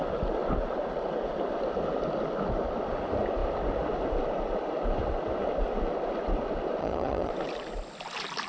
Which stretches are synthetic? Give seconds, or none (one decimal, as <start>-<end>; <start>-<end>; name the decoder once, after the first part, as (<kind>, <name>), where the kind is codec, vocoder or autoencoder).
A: 6.8-7.3 (vocoder, HiFi-GAN)